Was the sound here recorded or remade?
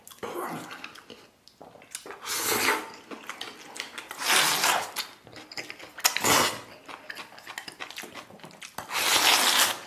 recorded